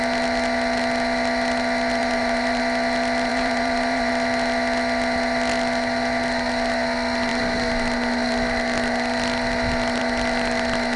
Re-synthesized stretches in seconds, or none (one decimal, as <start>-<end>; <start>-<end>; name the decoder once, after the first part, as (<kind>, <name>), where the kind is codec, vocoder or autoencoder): 2.0-2.6 (vocoder, BigVGAN v2); 3.3-4.1